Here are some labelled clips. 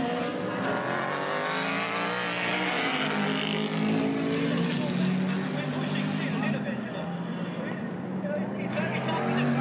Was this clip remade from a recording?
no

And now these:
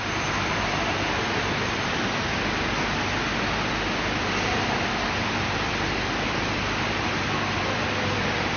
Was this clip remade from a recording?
no